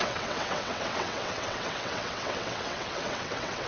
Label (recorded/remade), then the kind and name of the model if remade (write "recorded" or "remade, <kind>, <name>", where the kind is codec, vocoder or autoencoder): remade, vocoder, WaveNeXt